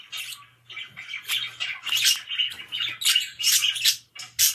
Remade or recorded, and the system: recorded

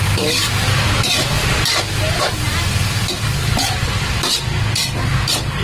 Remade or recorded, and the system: remade, vocoder, BigVGAN v2